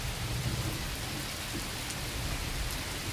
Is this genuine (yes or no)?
yes